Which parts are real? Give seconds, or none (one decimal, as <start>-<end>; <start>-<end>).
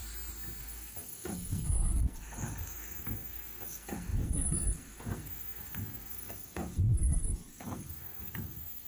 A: 0.0-0.6